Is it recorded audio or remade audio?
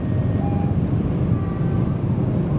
recorded